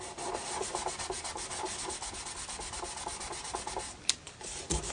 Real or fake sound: real